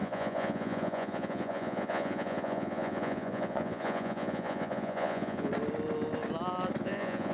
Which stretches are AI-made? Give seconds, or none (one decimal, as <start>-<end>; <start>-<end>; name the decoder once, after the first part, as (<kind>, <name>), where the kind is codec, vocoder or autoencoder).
0.0-5.5 (vocoder, Vocos); 6.8-7.3